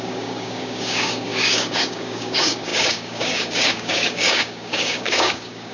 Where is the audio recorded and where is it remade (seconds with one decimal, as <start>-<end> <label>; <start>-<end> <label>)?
0.0-5.7 remade